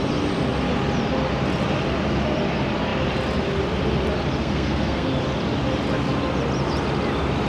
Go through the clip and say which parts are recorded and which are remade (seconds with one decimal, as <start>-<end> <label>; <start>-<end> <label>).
0.0-4.4 recorded; 4.4-5.1 remade; 5.1-7.5 recorded